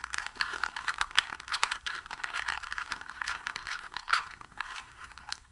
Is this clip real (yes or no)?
no